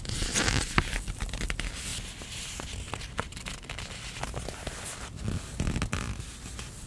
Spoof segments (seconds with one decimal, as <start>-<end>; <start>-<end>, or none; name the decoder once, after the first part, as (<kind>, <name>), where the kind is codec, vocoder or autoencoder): none